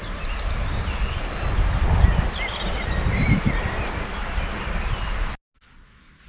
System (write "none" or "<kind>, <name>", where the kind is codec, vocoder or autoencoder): none